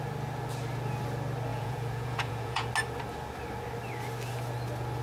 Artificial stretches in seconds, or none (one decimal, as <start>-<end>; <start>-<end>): 1.5-2.7

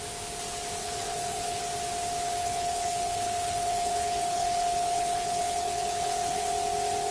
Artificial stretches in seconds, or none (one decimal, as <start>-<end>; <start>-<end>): 0.8-1.6; 2.4-6.5

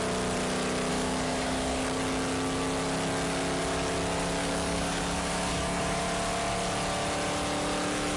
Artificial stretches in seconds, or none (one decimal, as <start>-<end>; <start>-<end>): 0.9-2.0; 4.4-6.0

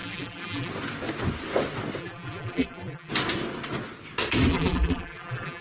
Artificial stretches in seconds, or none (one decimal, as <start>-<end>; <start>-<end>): 0.0-0.7; 2.0-3.1; 4.5-5.6

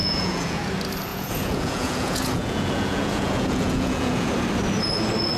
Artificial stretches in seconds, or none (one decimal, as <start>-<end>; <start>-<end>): 0.0-0.7; 1.1-4.3

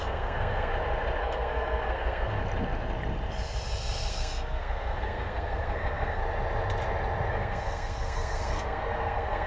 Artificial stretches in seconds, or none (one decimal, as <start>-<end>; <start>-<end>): 0.0-0.7; 1.2-2.4; 4.1-6.2; 7.3-9.5

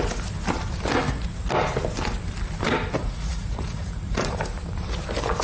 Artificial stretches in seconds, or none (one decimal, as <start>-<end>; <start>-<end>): 3.0-4.4

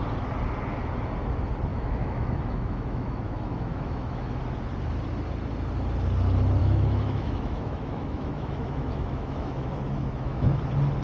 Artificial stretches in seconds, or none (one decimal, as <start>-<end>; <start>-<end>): 1.7-4.4; 6.6-10.6